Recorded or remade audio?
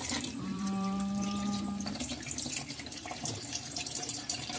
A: remade